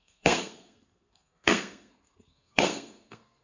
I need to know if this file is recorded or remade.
remade